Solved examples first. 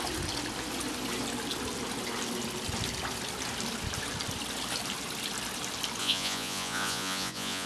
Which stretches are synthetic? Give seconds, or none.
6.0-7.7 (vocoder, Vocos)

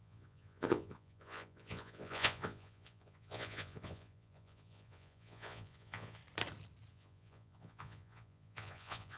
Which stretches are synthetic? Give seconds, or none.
0.0-6.2 (vocoder, Vocos); 6.9-9.2

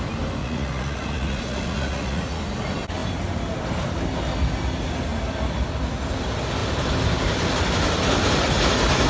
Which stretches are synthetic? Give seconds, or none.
0.4-2.4 (vocoder, Vocos)

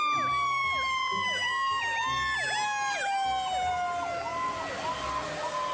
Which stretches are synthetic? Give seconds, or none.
none

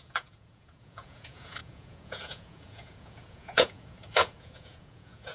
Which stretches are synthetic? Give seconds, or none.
0.0-5.3 (vocoder, Vocos)

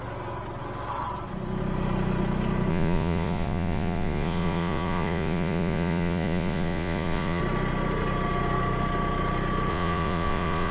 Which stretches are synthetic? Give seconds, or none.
2.7-7.4 (vocoder, Vocos); 9.7-10.7

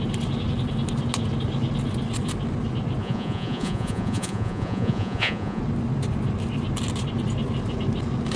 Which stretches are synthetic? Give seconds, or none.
3.0-5.6 (vocoder, Vocos)